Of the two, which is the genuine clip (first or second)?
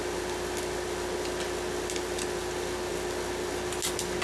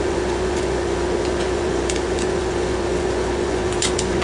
first